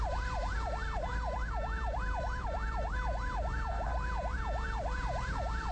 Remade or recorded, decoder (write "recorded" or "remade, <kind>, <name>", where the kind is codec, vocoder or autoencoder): remade, vocoder, BigVGAN v2